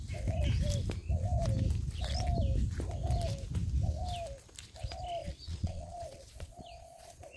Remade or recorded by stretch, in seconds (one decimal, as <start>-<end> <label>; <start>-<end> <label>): 0.0-5.2 recorded; 5.2-7.4 remade